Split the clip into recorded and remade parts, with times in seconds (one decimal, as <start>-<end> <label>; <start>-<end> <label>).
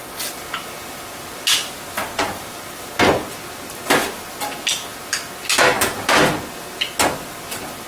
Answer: 0.0-2.0 recorded; 2.0-2.8 remade; 2.8-7.9 recorded